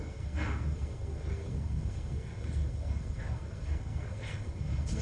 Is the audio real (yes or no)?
no